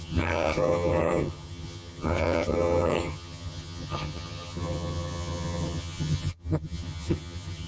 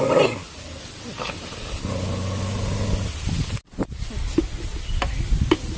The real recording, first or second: second